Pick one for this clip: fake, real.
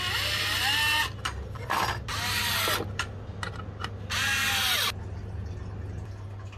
real